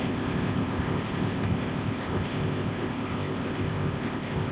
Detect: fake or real fake